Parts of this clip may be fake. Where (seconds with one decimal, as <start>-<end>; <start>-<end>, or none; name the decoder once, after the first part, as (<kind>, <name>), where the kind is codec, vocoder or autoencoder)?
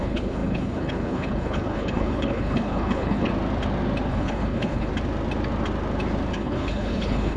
0.0-3.3 (codec, HILCodec); 4.1-4.9; 6.3-7.4